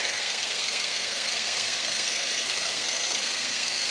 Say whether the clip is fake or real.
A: fake